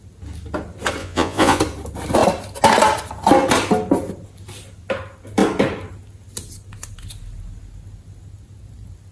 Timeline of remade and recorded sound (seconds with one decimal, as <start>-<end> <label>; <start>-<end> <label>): 0.0-1.0 recorded; 1.0-1.6 remade; 1.6-9.1 recorded